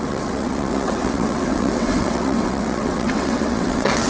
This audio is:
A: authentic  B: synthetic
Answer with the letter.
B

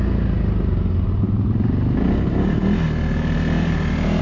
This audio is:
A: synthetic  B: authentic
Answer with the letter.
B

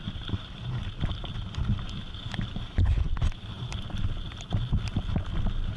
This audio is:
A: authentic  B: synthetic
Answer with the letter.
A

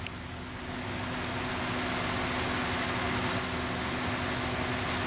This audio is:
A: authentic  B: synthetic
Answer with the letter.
A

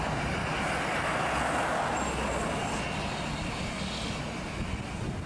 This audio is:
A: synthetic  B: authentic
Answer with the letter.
B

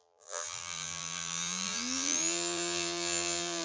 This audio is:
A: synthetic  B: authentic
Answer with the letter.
A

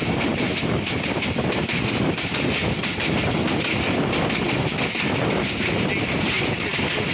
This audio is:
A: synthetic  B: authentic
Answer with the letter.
B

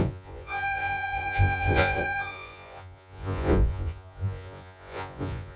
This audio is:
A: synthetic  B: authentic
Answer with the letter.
A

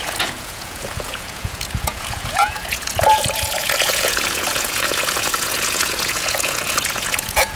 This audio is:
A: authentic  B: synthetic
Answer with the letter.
B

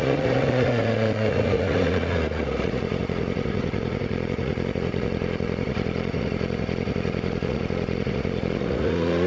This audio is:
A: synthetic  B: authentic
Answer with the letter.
A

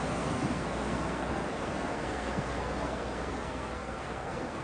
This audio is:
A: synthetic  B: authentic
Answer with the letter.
A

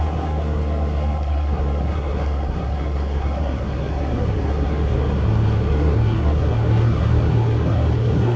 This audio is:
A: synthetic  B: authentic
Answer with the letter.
A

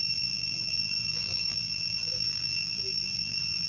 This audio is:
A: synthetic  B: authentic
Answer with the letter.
A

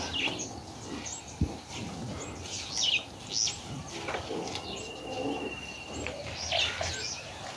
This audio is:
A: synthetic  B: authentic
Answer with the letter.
B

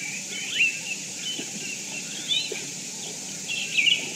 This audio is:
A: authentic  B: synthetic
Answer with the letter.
A